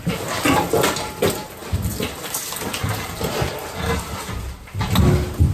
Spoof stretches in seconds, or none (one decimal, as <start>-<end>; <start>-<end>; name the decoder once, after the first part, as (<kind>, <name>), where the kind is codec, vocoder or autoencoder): none